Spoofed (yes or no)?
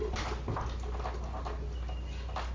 no